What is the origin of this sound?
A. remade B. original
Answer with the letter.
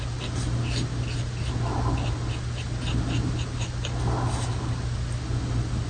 B